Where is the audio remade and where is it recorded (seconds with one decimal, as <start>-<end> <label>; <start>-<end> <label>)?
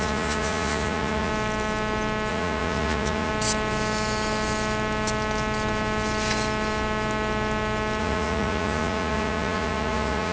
0.0-1.3 remade; 1.3-2.3 recorded; 2.3-3.3 remade; 3.3-8.0 recorded; 8.0-10.3 remade